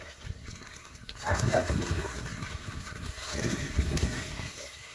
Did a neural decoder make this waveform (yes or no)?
yes